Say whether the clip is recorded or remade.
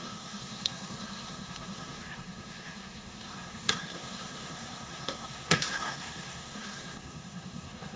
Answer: remade